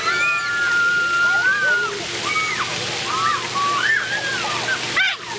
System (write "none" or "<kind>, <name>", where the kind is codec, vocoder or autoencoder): none